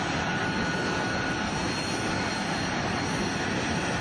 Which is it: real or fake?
real